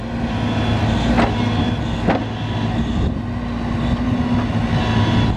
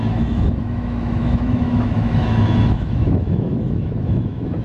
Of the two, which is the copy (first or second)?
second